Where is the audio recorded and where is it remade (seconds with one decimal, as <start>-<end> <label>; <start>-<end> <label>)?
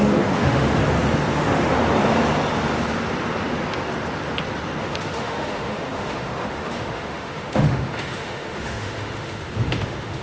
0.0-0.8 remade; 0.8-1.3 recorded; 1.3-1.8 remade; 1.8-4.8 recorded; 4.8-10.2 remade